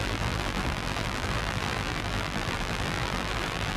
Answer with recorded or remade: remade